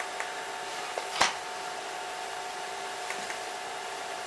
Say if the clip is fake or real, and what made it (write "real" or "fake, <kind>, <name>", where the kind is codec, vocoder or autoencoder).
real